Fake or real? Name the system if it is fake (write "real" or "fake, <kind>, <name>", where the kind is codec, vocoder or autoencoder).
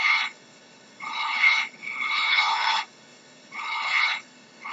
fake, codec, HILCodec